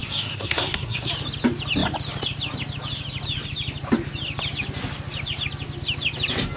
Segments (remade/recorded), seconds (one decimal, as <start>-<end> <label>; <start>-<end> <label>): 0.0-1.1 remade; 1.1-6.6 recorded